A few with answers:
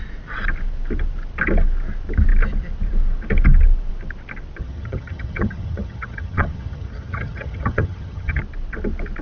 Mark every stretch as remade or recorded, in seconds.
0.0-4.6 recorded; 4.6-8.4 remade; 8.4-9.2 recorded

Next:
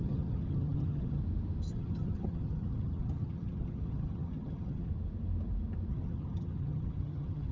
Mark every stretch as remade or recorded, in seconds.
0.0-1.2 remade; 1.2-1.7 recorded; 1.7-4.9 remade; 4.9-5.9 recorded; 5.9-7.5 remade

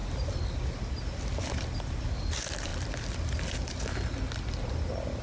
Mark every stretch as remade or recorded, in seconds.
0.0-5.2 recorded

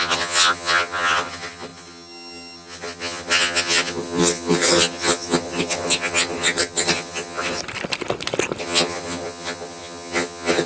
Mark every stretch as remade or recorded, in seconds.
0.0-7.6 remade; 7.6-8.6 recorded; 8.6-10.7 remade

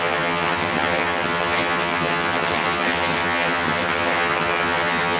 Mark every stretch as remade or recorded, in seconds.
0.0-5.2 remade

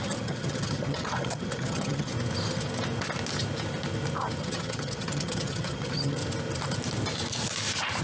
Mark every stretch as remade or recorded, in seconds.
0.0-2.1 remade; 2.1-4.4 recorded; 4.4-6.2 remade; 6.2-8.0 recorded

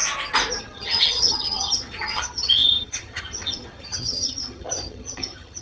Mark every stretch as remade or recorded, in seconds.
0.0-0.6 recorded; 0.6-5.6 remade

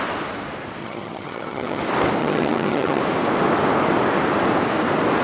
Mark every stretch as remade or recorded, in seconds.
0.0-0.8 recorded; 0.8-1.8 remade; 1.8-2.2 recorded; 2.2-3.0 remade; 3.0-5.2 recorded